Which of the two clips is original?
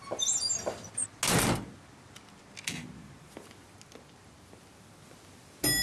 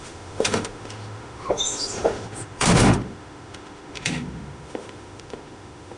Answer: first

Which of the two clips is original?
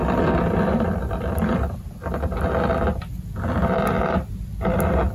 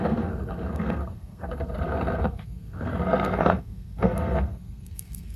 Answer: first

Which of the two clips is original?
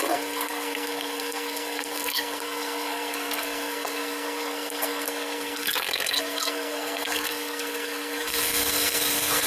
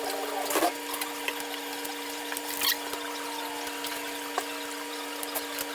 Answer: second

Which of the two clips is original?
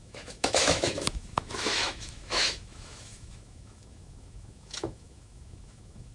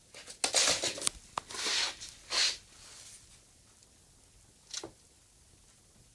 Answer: second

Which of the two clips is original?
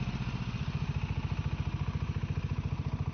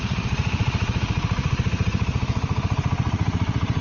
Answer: first